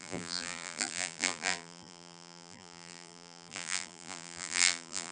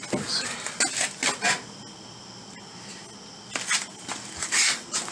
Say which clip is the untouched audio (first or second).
second